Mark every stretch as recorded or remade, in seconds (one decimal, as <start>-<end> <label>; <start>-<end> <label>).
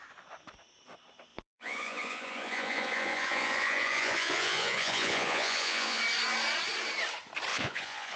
0.0-1.3 recorded; 1.3-6.0 remade; 6.0-7.5 recorded; 7.5-8.2 remade